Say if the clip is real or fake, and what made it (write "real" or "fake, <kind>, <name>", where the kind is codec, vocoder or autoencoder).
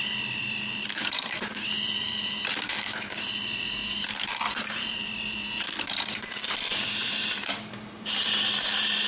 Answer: fake, vocoder, BigVGAN v2